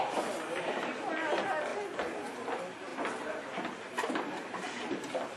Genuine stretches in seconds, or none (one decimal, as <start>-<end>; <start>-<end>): 0.0-5.4